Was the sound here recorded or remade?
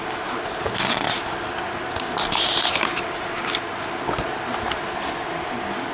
recorded